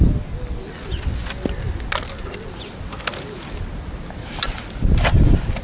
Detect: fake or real real